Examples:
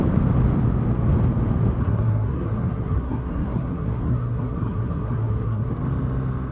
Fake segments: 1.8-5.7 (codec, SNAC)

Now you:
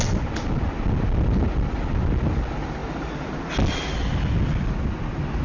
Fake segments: none

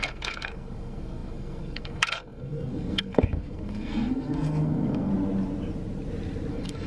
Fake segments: 0.0-5.1 (codec, SNAC); 6.5-6.9

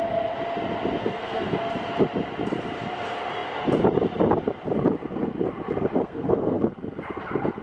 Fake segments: 1.0-1.6 (codec, SNAC); 6.0-6.6

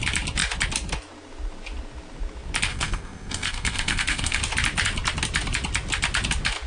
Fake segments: 2.7-4.4 (codec, SNAC)

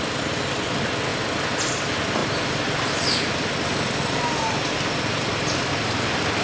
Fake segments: none